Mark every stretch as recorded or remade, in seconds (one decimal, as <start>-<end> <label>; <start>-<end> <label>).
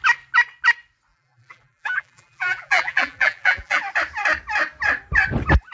0.0-1.1 recorded; 1.1-3.8 remade; 3.8-5.7 recorded